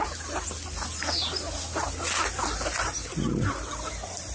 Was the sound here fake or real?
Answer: real